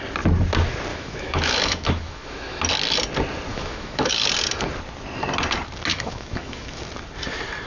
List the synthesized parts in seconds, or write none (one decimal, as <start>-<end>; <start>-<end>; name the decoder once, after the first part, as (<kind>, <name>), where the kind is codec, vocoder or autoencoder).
0.9-2.6 (autoencoder, DAC-VAE); 3.5-4.1; 5.9-6.8